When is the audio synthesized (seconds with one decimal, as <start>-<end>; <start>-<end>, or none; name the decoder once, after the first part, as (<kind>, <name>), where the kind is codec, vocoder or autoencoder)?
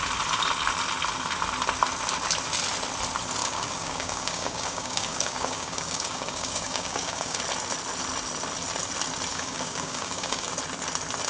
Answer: 3.4-7.4 (codec, DAC); 9.3-10.5